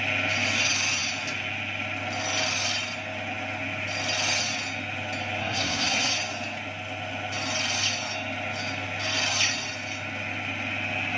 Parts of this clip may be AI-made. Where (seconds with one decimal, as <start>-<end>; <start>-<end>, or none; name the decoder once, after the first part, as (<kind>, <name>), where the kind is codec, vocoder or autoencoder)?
5.4-6.1 (codec, SNAC)

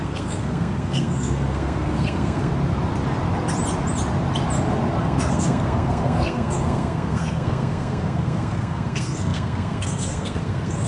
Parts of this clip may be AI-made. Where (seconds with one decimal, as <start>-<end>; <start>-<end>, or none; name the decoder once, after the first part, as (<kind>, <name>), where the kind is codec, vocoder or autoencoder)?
0.0-2.5 (codec, SNAC); 5.0-10.9

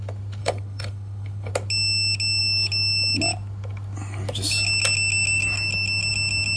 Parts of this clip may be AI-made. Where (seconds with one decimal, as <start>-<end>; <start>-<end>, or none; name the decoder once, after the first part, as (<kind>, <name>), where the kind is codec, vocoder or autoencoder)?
0.4-1.5 (codec, HILCodec)

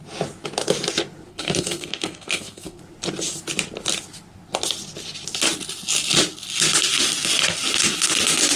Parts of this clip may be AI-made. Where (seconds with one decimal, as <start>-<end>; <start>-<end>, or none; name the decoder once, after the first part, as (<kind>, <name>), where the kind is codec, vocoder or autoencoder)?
1.3-2.8 (codec, SNAC)

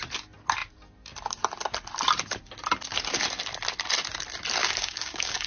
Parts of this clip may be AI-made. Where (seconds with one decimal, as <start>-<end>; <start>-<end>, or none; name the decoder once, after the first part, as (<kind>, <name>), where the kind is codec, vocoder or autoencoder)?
4.6-5.5 (codec, DAC)

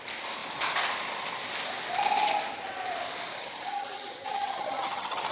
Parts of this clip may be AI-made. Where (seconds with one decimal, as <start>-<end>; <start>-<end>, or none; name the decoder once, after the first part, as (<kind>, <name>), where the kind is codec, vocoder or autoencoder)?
3.4-5.3 (vocoder, HiFi-GAN)